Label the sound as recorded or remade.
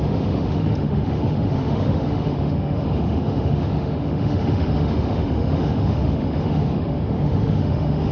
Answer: remade